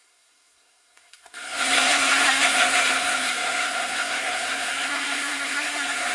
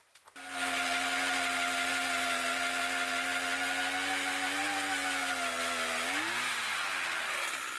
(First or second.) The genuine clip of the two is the second